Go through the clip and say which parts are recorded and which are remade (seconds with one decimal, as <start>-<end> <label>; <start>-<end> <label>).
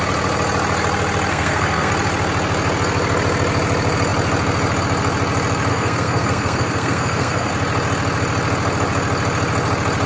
0.0-1.3 recorded; 1.3-1.9 remade; 1.9-5.7 recorded; 5.7-7.5 remade; 7.5-10.1 recorded